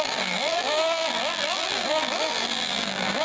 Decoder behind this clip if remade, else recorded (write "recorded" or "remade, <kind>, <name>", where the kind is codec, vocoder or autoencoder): remade, vocoder, BigVGAN v2